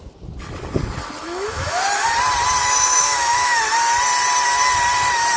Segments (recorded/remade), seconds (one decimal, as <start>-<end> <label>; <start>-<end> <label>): 0.0-1.2 recorded; 1.2-1.8 remade; 1.8-2.6 recorded; 2.6-3.6 remade; 3.6-5.4 recorded